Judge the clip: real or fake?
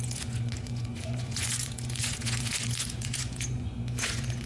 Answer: fake